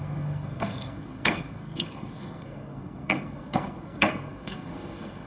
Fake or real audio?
fake